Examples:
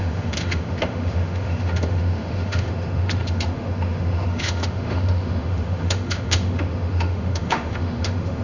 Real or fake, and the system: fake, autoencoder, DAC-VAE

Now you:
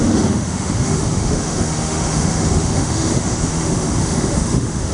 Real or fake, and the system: fake, autoencoder, DAC-VAE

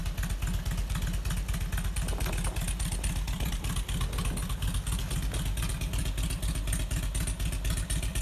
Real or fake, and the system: real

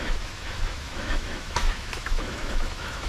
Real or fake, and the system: fake, autoencoder, DAC-VAE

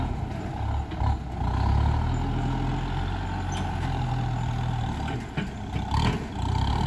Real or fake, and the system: real